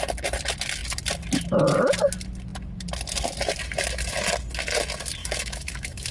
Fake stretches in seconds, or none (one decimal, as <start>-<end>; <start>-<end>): 5.2-6.1